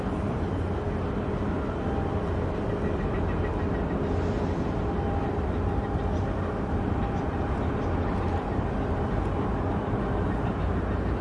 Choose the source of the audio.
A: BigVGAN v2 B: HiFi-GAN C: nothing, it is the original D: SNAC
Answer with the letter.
C